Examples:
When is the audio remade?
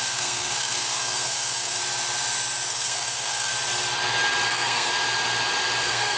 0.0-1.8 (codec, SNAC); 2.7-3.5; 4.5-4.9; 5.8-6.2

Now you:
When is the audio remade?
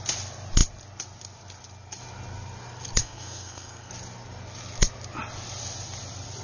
3.0-3.9 (codec, SNAC)